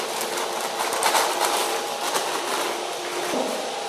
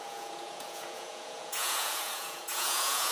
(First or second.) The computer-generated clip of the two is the second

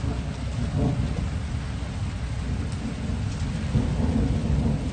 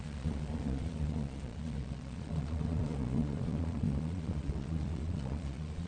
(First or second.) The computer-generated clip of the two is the second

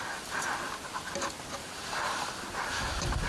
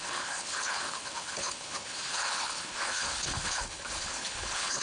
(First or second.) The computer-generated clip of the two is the second